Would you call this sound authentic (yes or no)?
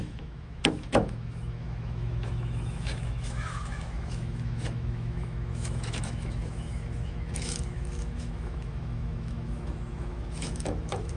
no